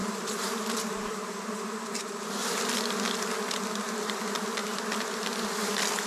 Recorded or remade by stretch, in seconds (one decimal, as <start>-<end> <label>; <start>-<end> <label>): 0.0-2.3 remade; 2.3-6.1 recorded